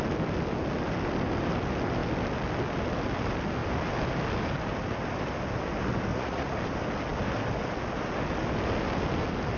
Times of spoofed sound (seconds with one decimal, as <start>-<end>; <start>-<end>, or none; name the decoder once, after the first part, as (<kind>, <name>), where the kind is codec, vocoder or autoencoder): 6.1-6.6 (vocoder, Vocos)